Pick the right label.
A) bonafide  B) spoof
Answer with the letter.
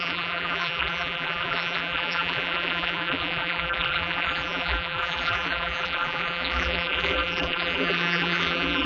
B